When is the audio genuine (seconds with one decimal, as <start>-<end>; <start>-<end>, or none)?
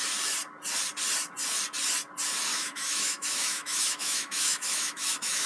0.0-2.5